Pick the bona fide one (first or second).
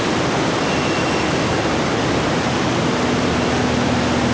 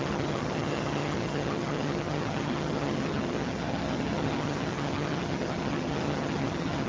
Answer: first